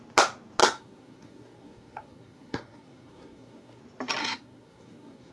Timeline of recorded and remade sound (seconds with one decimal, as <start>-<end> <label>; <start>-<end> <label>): 0.0-0.6 recorded; 0.6-3.8 remade; 3.8-4.2 recorded; 4.2-5.3 remade